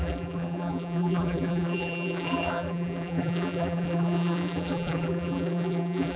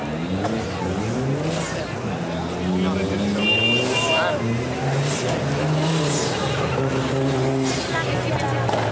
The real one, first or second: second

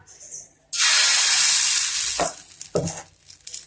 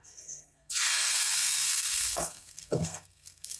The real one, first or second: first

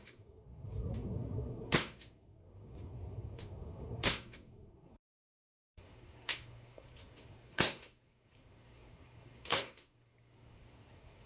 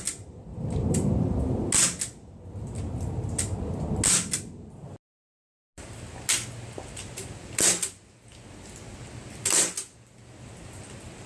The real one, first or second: second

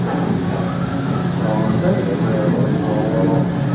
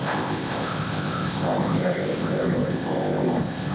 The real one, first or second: first